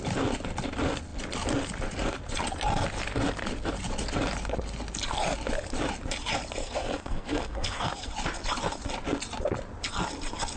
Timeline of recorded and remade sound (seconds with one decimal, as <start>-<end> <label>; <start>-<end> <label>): 0.0-6.6 recorded; 6.6-8.1 remade; 8.1-10.6 recorded